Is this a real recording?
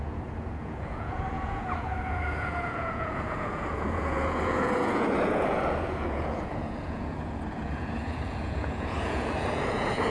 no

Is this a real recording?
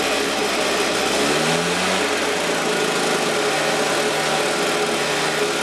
yes